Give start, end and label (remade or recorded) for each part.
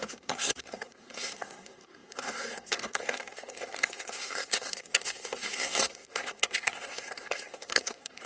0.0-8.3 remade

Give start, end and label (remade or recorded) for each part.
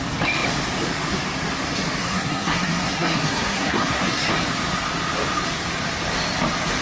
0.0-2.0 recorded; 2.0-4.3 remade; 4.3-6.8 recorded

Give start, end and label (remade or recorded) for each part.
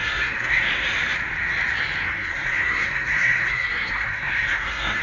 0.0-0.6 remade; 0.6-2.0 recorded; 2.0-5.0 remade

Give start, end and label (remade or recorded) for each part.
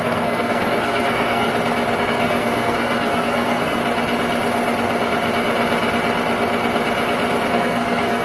0.0-1.5 remade; 1.5-2.0 recorded; 2.0-3.8 remade; 3.8-7.5 recorded; 7.5-8.2 remade